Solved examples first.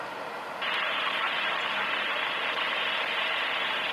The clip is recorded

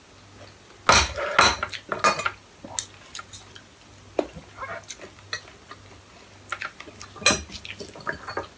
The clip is recorded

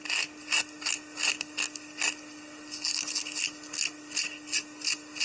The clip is recorded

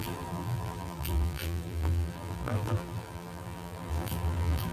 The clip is remade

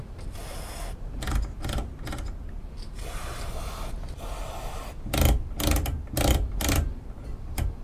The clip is recorded